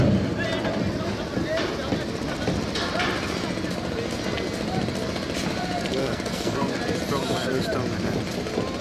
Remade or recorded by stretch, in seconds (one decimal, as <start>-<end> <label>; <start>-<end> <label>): 0.0-6.0 recorded; 6.0-6.8 remade; 6.8-8.8 recorded